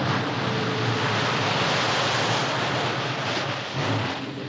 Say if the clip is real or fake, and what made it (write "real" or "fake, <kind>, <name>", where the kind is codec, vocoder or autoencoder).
real